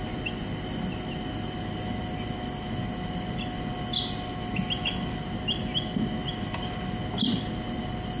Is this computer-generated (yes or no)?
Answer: no